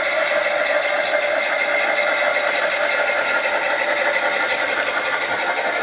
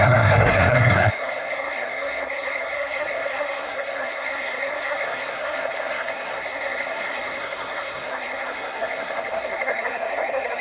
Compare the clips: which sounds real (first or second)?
first